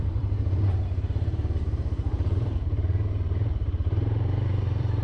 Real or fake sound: fake